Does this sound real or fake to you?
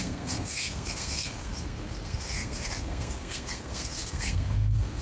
fake